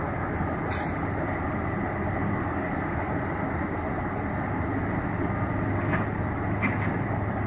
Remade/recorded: recorded